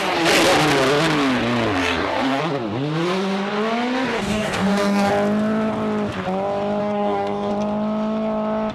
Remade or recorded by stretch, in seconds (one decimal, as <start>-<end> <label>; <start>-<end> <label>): 0.0-1.8 recorded; 1.8-2.4 remade; 2.4-4.1 recorded; 4.1-5.1 remade; 5.1-6.8 recorded; 6.8-7.5 remade; 7.5-8.7 recorded